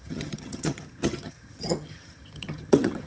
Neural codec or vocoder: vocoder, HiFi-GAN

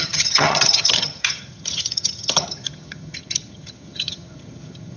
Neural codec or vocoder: vocoder, HiFi-GAN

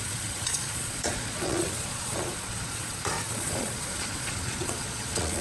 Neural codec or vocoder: vocoder, Vocos